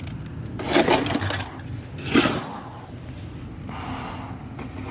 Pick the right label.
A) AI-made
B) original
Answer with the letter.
B